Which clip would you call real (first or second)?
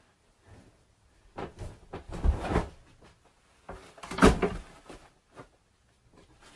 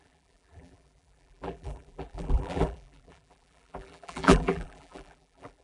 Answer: first